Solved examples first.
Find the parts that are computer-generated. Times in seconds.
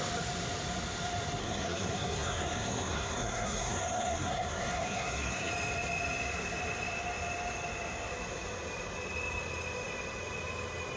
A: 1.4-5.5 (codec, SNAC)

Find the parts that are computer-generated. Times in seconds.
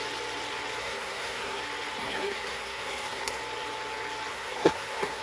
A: 0.8-1.6 (codec, SNAC); 2.0-3.4; 4.3-5.2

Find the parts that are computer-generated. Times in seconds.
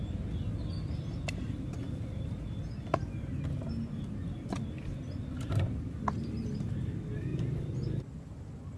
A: none